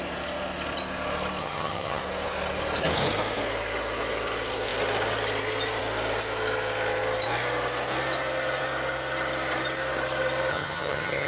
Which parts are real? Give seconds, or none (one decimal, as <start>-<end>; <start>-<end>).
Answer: 0.0-1.4; 2.0-10.5